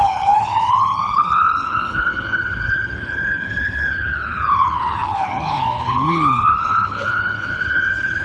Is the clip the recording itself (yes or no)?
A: no